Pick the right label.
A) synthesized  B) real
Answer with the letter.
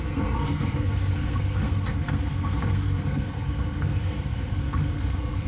A